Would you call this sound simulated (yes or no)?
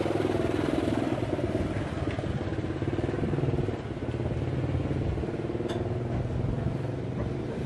no